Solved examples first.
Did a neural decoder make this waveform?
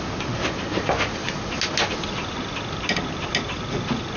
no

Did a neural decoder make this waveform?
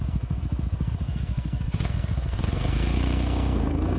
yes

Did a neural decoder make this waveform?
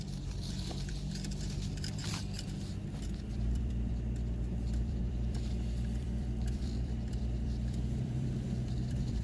yes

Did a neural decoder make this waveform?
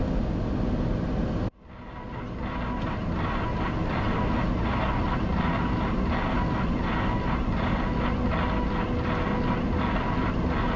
no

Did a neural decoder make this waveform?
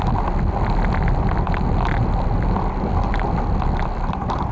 yes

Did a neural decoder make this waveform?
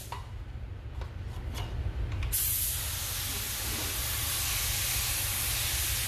no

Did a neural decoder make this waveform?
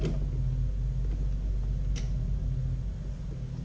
no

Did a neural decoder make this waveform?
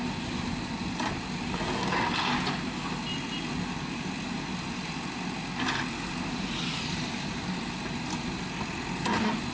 no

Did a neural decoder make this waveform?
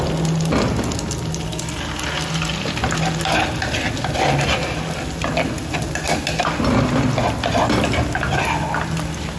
no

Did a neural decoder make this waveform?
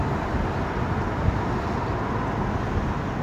no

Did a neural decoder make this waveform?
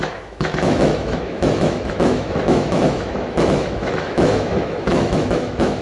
yes